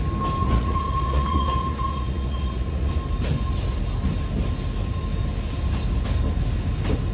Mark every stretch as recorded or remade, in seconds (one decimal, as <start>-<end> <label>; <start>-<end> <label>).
0.0-0.4 recorded; 0.4-2.9 remade; 2.9-7.1 recorded